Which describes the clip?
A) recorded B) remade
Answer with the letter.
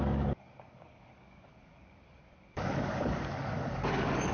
B